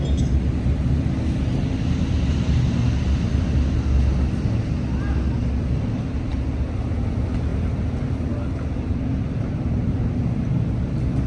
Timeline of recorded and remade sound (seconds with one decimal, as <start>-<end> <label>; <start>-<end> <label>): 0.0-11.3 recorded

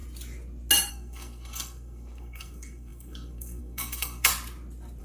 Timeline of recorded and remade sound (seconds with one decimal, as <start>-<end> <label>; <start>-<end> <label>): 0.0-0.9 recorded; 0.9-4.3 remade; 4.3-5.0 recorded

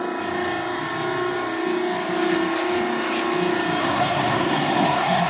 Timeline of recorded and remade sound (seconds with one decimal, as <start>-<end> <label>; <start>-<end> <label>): 0.0-3.8 recorded; 3.8-5.3 remade